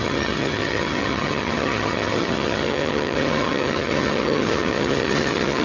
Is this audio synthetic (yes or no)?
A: yes